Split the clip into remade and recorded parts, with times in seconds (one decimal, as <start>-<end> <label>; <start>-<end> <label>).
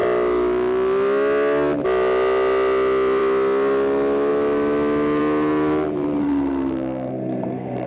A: 0.0-6.2 recorded; 6.2-7.9 remade